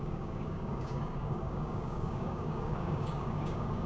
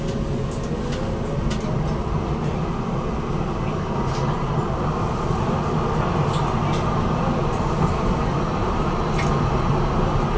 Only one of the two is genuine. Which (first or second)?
second